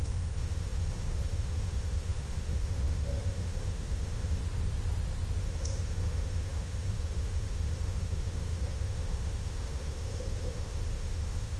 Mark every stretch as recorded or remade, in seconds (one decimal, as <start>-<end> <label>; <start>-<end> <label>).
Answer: 0.0-4.4 remade; 4.4-5.4 recorded; 5.4-11.6 remade